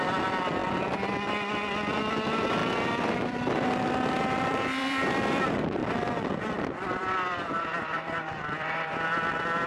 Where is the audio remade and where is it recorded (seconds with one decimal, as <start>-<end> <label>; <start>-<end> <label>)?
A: 0.0-0.6 remade; 0.6-2.1 recorded; 2.1-5.8 remade; 5.8-6.4 recorded; 6.4-9.7 remade